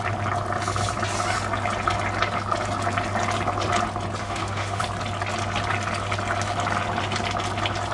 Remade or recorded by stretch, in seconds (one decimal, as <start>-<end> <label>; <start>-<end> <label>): 0.0-4.2 recorded; 4.2-4.8 remade; 4.8-7.9 recorded